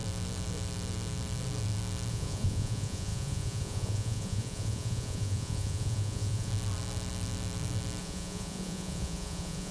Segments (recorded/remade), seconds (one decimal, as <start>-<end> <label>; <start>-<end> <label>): 0.0-2.1 recorded; 2.1-6.5 remade; 6.5-8.0 recorded; 8.0-9.7 remade